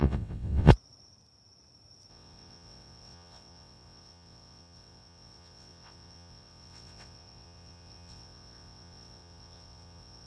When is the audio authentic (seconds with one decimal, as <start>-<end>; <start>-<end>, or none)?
0.7-2.1